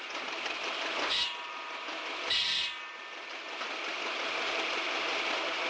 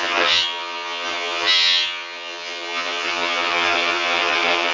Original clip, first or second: first